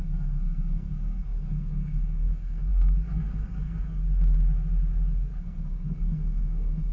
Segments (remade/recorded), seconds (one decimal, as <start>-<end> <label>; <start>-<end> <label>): 0.0-4.0 remade; 4.0-5.4 recorded; 5.4-6.9 remade